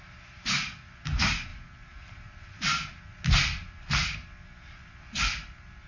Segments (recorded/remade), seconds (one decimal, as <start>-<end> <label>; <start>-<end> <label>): 0.0-5.9 recorded